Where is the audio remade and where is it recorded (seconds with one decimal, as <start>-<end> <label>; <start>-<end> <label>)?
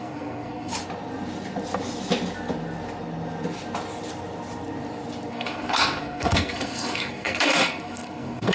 0.0-0.7 remade; 0.7-5.3 recorded; 5.3-8.5 remade